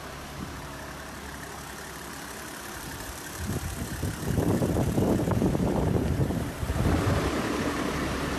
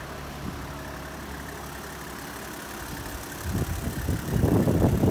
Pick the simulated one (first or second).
first